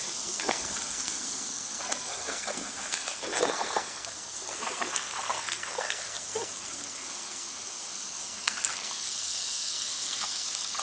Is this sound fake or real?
fake